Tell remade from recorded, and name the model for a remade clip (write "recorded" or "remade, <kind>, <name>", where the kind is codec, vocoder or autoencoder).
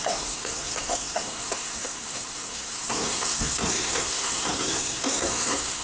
remade, codec, SNAC